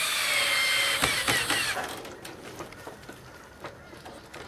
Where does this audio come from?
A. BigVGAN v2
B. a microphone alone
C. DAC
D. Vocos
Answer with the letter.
B